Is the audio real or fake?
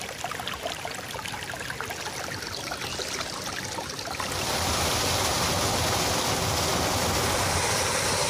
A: real